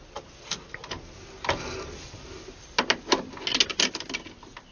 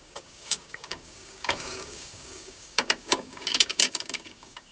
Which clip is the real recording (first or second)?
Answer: first